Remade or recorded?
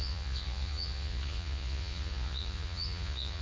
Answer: remade